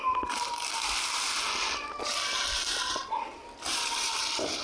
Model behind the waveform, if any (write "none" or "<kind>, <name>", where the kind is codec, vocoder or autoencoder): none